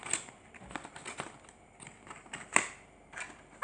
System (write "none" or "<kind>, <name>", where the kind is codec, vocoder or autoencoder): none